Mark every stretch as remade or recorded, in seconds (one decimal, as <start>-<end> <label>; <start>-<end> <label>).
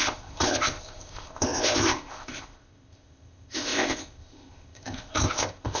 0.0-5.8 remade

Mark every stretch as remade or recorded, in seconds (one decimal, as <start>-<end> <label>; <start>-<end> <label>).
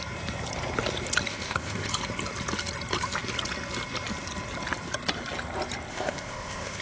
0.0-1.3 recorded; 1.3-1.9 remade; 1.9-5.9 recorded; 5.9-6.8 remade